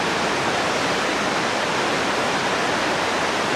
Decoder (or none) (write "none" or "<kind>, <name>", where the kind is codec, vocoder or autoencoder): none